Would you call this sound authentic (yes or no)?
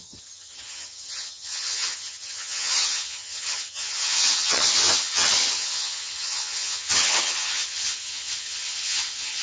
no